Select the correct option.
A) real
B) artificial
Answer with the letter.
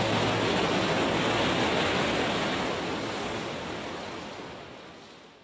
A